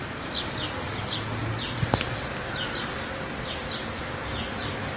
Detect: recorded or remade recorded